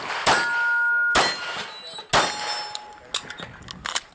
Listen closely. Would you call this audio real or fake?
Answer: real